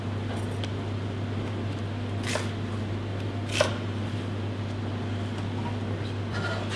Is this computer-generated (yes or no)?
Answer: no